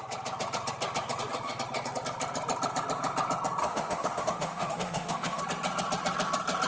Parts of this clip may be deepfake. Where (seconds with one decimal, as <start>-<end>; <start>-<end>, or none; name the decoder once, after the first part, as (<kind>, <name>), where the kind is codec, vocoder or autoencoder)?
3.6-5.4 (autoencoder, DAC-VAE)